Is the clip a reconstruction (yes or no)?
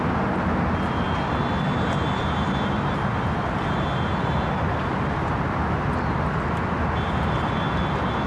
no